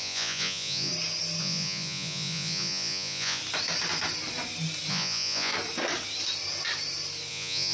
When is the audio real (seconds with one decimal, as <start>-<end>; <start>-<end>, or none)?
0.9-1.4; 3.4-4.9; 5.5-7.3